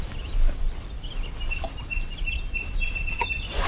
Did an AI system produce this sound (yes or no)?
no